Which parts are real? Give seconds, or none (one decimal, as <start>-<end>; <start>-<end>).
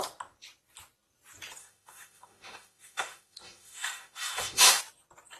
0.0-1.6; 4.8-5.4